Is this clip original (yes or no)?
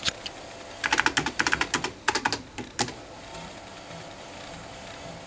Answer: yes